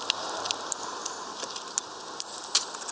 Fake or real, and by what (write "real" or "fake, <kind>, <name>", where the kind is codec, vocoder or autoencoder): real